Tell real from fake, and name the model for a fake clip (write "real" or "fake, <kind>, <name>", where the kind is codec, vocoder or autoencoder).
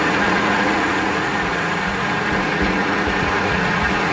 fake, vocoder, Vocos